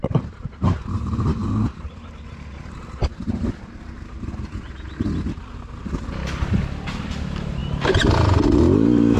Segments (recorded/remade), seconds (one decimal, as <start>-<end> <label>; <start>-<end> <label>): 0.0-9.2 recorded